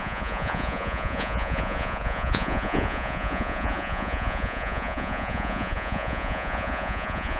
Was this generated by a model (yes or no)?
yes